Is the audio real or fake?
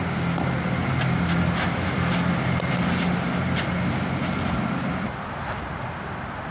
real